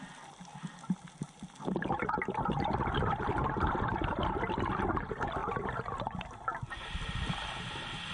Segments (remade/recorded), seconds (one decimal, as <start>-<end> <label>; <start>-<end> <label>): 0.0-8.1 recorded